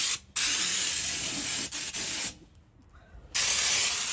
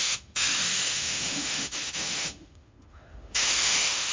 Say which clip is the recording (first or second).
first